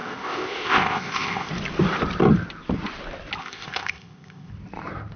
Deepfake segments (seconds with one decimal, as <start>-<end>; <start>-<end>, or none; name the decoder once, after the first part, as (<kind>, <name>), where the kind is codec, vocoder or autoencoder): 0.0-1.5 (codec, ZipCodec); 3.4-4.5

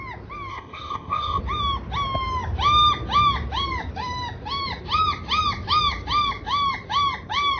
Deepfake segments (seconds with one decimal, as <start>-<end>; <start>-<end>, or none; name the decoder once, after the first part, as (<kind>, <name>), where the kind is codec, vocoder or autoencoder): 0.5-1.4 (codec, ZipCodec)

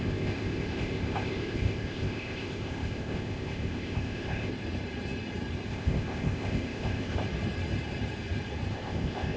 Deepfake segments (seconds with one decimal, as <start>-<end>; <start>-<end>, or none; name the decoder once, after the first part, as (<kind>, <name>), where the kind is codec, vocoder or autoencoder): 0.0-4.5 (codec, ZipCodec); 5.7-7.2; 8.7-9.4

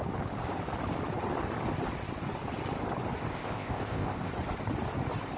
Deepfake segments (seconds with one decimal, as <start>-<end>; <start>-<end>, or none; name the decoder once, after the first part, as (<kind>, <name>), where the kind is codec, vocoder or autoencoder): 3.3-4.3 (codec, ZipCodec)

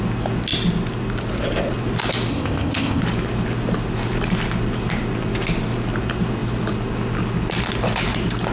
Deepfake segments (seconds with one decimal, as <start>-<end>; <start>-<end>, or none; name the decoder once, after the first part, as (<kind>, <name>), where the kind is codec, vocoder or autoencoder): 2.3-3.0 (codec, ZipCodec)

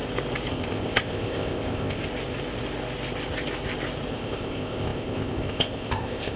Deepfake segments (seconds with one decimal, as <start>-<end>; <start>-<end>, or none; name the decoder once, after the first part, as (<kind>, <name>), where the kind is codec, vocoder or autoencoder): 0.5-2.0 (codec, ZipCodec); 4.1-6.4